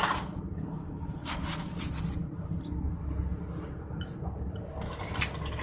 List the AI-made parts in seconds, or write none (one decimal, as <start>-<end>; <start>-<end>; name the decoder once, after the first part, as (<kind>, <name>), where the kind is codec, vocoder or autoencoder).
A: none